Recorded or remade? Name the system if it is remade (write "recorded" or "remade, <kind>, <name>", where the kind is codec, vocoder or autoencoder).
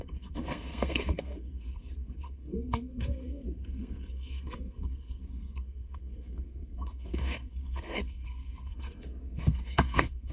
remade, codec, SNAC